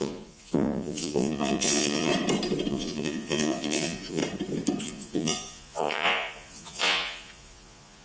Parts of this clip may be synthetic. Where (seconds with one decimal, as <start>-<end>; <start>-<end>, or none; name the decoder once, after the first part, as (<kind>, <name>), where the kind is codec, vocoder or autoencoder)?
0.0-2.1 (vocoder, Vocos); 2.7-4.2; 4.8-8.0